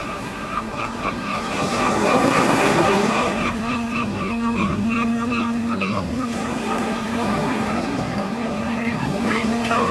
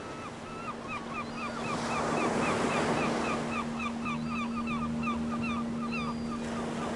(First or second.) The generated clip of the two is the first